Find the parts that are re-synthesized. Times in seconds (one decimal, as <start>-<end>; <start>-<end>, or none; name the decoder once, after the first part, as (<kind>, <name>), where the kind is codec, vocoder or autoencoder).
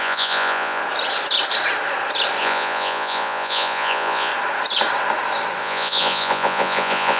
0.0-0.8 (vocoder, Vocos); 2.4-4.3; 5.6-7.2